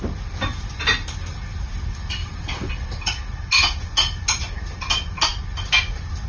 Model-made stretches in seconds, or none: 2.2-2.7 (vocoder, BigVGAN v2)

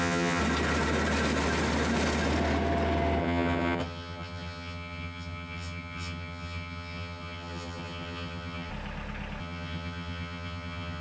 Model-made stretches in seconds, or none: 0.0-0.4 (vocoder, HiFi-GAN); 3.2-8.7; 9.4-11.0

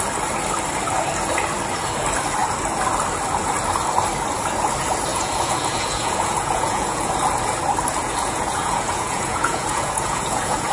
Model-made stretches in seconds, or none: 5.1-7.1 (vocoder, Vocos); 8.0-10.7

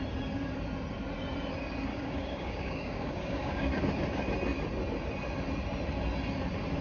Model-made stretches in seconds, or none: 1.9-3.8 (codec, DAC)